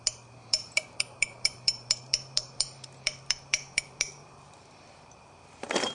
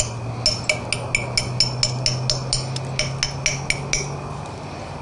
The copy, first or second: first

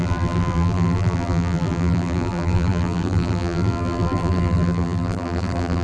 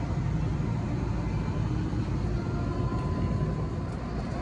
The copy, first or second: first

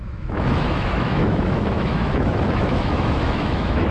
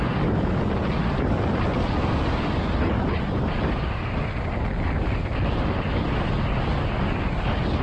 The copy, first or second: first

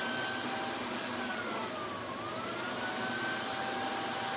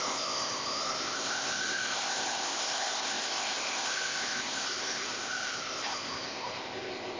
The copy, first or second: second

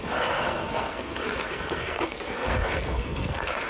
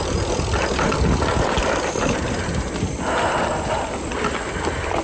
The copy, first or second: first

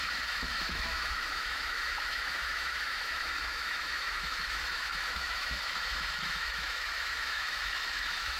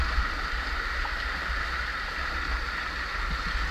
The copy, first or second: first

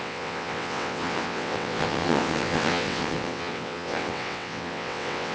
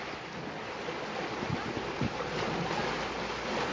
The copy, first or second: first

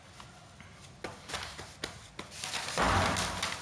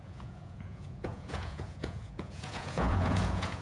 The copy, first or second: second